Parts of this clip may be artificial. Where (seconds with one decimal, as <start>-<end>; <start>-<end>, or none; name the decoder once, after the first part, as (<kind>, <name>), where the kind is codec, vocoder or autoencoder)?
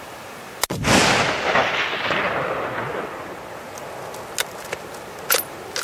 none